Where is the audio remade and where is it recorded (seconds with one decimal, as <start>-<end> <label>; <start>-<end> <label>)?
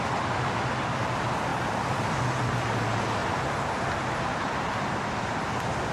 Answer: 0.0-1.5 recorded; 1.5-2.2 remade; 2.2-5.9 recorded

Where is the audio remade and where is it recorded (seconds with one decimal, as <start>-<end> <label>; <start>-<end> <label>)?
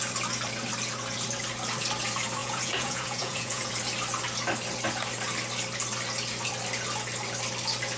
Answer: 0.0-2.4 recorded; 2.4-3.7 remade; 3.7-8.0 recorded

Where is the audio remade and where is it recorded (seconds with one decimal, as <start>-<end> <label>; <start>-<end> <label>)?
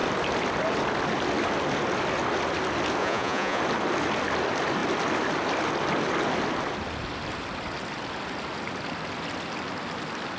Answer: 0.0-3.0 recorded; 3.0-3.6 remade; 3.6-10.4 recorded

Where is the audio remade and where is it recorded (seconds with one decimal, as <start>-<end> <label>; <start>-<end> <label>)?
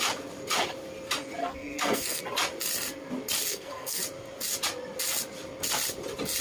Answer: 0.0-1.4 recorded; 1.4-2.2 remade; 2.2-3.5 recorded; 3.5-4.0 remade; 4.0-6.4 recorded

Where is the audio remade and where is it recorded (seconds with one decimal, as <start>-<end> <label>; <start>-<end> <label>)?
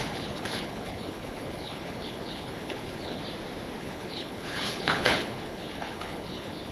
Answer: 0.0-3.2 remade; 3.2-3.8 recorded; 3.8-6.7 remade